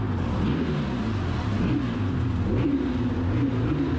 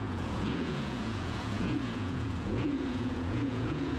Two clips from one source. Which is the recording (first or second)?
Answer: first